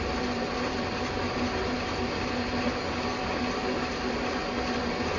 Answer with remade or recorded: recorded